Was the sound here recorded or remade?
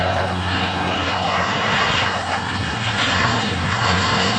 remade